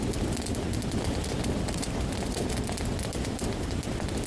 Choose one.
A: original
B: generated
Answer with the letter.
A